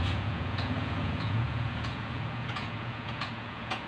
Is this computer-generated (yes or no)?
yes